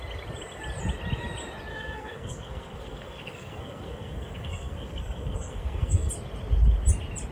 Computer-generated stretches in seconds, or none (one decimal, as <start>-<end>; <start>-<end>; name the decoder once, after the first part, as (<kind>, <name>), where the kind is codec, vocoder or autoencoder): 1.7-6.1 (codec, SNAC)